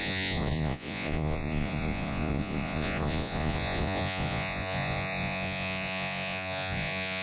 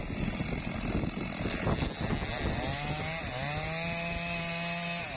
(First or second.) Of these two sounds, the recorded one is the second